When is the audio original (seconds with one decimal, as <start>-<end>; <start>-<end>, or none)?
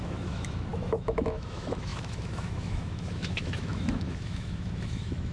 none